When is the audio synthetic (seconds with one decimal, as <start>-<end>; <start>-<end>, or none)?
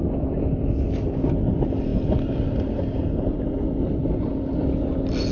none